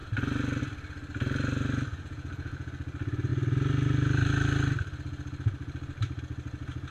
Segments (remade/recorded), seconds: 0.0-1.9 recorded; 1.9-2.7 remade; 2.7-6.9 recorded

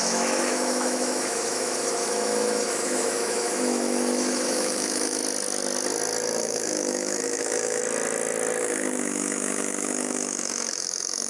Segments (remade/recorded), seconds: 0.0-5.2 remade; 5.2-6.4 recorded; 6.4-7.8 remade; 7.8-8.6 recorded; 8.6-11.3 remade

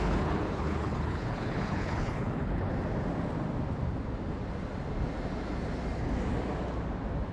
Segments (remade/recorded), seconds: 0.0-2.7 remade; 2.7-7.3 recorded

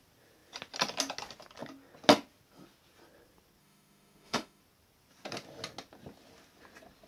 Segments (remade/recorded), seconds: 0.0-3.6 recorded; 3.6-4.6 remade; 4.6-7.1 recorded

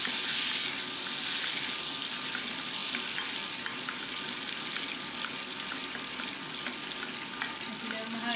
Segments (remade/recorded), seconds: 0.0-8.4 recorded

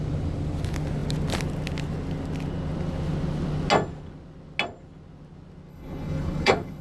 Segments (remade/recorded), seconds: 0.0-5.7 recorded; 5.7-6.8 remade

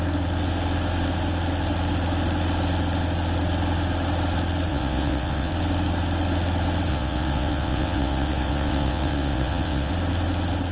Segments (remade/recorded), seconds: 0.0-4.7 recorded; 4.7-5.5 remade; 5.5-6.9 recorded; 6.9-9.9 remade; 9.9-10.7 recorded

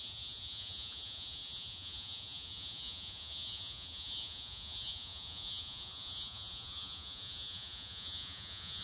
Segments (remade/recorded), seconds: 0.0-8.8 remade